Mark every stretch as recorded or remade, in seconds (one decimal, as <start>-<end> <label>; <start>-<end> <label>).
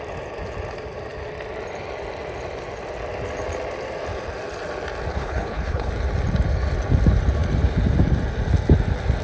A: 0.0-5.1 recorded; 5.1-5.9 remade; 5.9-9.2 recorded